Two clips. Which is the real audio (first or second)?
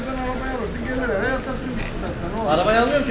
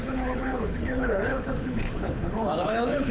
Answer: first